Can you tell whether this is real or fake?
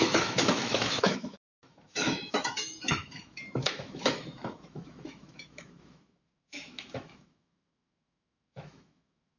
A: fake